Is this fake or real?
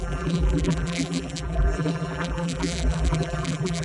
fake